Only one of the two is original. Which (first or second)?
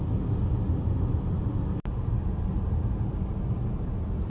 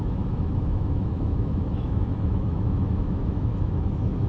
first